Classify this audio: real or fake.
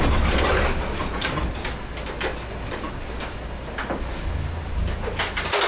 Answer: real